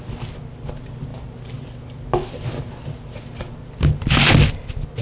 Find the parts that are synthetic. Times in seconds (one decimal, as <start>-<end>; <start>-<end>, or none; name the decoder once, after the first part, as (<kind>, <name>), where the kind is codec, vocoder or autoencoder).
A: none